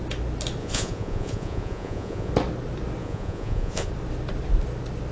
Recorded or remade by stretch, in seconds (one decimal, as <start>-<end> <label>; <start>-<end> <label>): 0.0-0.6 recorded; 0.6-2.3 remade; 2.3-3.0 recorded; 3.0-3.9 remade; 3.9-5.1 recorded